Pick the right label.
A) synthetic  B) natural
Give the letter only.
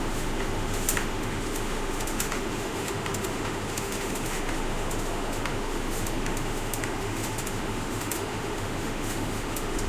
A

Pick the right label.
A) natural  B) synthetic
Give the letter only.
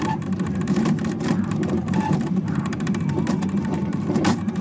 B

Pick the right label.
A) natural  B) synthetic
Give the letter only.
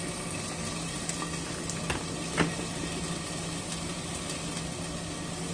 A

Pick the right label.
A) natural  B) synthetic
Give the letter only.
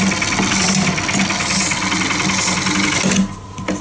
A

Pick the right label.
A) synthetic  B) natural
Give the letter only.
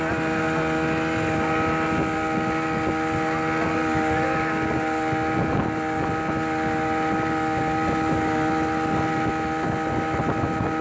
B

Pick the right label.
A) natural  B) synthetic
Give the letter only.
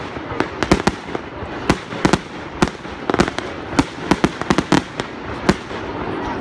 A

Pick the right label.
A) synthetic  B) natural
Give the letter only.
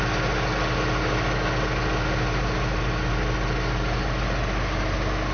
B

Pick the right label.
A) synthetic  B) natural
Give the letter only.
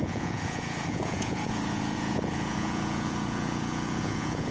A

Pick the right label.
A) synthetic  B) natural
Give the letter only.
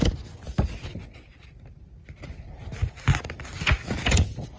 B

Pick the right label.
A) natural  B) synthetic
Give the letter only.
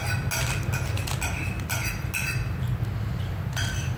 A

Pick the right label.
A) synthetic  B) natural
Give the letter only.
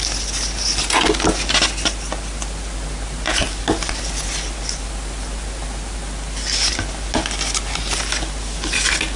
B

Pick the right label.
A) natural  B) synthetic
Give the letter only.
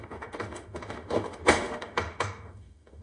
B